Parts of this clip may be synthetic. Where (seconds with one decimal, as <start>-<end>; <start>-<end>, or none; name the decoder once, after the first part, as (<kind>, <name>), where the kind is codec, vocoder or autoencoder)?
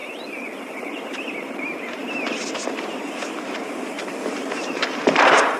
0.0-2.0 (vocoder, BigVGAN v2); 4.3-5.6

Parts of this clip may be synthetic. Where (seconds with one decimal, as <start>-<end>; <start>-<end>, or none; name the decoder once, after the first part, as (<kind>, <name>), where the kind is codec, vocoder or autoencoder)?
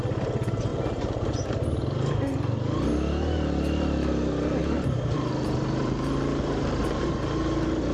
0.7-1.5 (vocoder, BigVGAN v2); 4.6-7.1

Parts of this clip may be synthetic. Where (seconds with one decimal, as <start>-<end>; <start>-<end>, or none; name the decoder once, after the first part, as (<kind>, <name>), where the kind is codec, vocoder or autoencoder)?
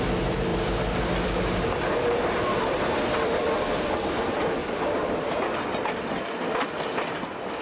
0.5-3.9 (vocoder, BigVGAN v2); 4.6-5.1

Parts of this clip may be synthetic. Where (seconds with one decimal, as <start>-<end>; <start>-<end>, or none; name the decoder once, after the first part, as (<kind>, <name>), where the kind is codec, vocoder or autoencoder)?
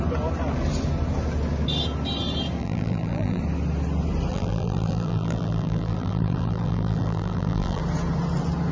2.6-3.4 (vocoder, BigVGAN v2); 4.3-7.8